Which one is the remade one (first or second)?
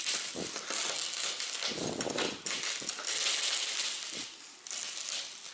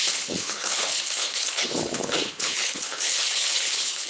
second